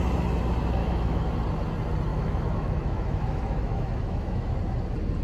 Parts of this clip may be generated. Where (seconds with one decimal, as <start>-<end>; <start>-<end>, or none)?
0.8-1.3; 2.1-4.5